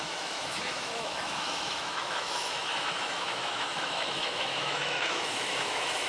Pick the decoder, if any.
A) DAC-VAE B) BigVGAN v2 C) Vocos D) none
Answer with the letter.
A